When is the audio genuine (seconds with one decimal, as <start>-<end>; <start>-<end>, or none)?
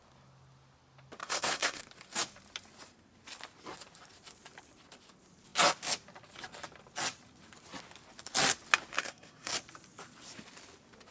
0.0-1.2; 1.8-8.9; 9.5-11.1